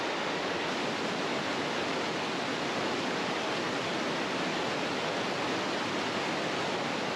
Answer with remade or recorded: recorded